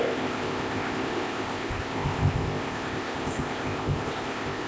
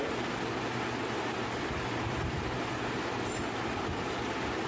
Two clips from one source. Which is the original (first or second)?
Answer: second